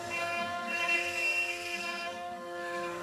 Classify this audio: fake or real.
fake